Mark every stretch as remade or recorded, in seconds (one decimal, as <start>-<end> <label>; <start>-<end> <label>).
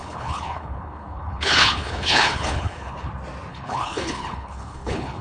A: 0.0-3.1 remade; 3.1-3.5 recorded; 3.5-5.2 remade